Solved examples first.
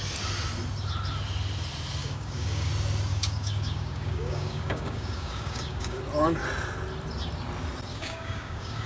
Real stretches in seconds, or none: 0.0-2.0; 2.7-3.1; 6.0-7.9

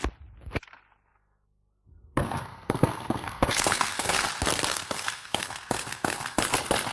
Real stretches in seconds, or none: 0.0-1.1; 4.3-4.7; 6.4-6.9

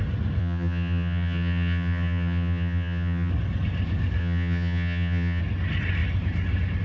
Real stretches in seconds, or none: 0.0-0.4; 3.3-4.2; 5.4-6.8

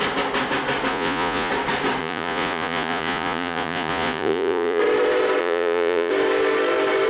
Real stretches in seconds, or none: 0.0-0.9; 1.5-2.0; 4.8-5.4; 6.1-7.1

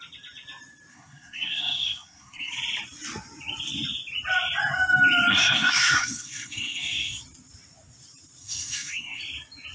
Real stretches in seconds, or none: 0.0-0.9; 2.5-5.3; 7.2-8.4; 9.2-9.7